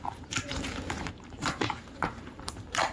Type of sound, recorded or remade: remade